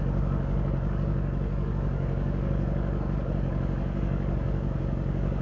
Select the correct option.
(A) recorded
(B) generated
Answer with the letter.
B